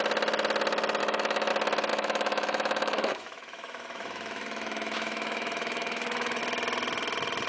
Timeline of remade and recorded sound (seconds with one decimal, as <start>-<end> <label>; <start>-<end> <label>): 0.0-1.0 recorded; 1.0-1.5 remade; 1.5-1.9 recorded; 1.9-6.4 remade; 6.4-7.5 recorded